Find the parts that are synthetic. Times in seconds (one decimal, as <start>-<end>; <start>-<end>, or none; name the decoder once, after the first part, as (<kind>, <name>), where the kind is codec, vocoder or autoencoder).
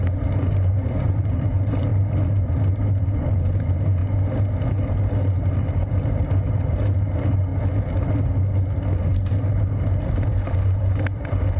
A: 0.0-4.0 (vocoder, BigVGAN v2); 4.7-7.5; 9.3-11.6